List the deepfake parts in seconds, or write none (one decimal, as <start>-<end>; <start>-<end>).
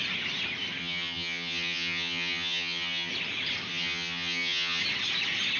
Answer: 0.8-3.1; 3.7-4.8